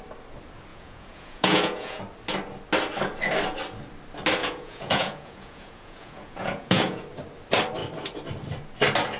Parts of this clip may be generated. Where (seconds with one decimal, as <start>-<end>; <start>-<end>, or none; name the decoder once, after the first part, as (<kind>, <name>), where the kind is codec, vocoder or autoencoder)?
0.7-2.0 (vocoder, Vocos); 4.4-7.0